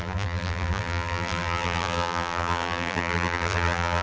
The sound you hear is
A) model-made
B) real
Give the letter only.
A